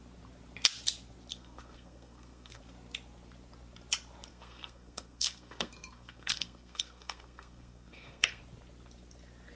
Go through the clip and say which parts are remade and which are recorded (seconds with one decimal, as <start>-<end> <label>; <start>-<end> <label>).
0.0-1.3 recorded; 1.3-2.6 remade; 2.6-4.3 recorded; 4.3-8.4 remade; 8.4-9.6 recorded